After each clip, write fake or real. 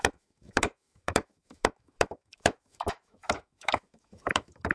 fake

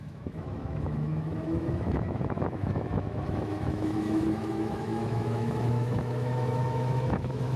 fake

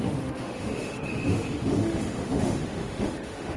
fake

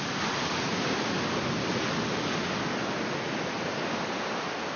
real